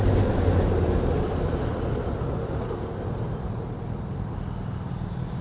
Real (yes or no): yes